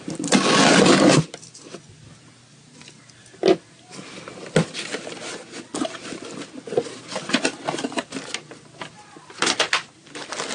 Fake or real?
real